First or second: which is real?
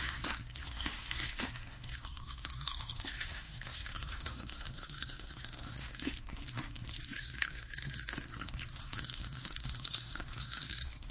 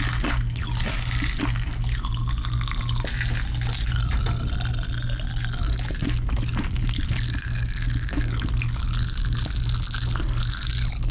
second